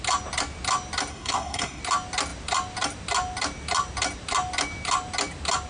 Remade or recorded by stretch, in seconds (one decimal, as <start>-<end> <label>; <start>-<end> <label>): 0.0-1.1 recorded; 1.1-1.8 remade; 1.8-5.7 recorded